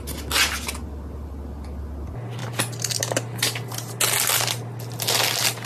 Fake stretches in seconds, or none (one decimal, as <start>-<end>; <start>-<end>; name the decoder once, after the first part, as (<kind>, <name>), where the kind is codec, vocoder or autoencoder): none